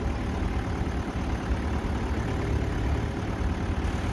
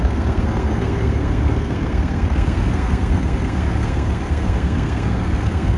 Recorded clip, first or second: first